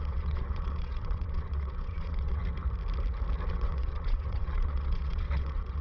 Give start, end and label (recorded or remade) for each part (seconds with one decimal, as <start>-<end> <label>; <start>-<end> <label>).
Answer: 0.0-2.4 remade; 2.4-3.5 recorded; 3.5-5.8 remade